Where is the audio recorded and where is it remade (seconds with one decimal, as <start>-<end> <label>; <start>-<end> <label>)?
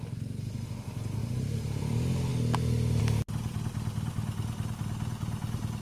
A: 0.0-5.8 recorded